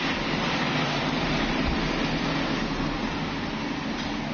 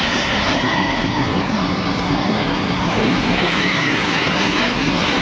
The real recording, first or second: first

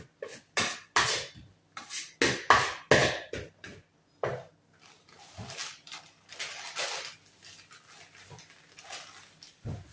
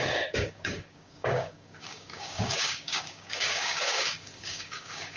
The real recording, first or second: first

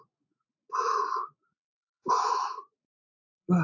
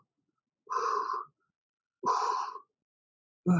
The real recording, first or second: second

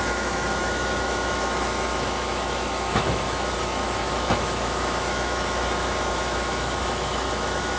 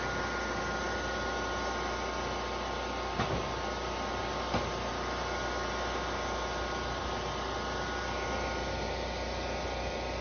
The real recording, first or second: second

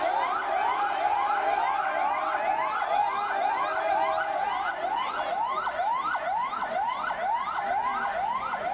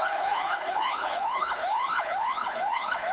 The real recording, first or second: first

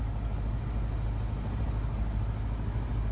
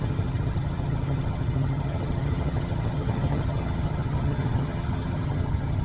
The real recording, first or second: first